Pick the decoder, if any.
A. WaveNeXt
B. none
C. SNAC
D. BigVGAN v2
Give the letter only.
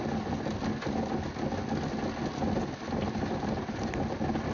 B